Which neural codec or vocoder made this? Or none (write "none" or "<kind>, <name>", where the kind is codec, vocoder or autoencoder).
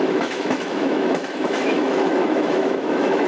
autoencoder, DAC-VAE